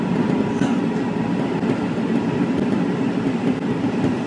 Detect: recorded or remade recorded